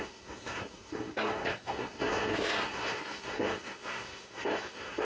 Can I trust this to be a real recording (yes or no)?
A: no